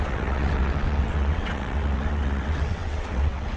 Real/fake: fake